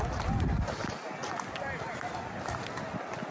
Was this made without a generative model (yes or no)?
yes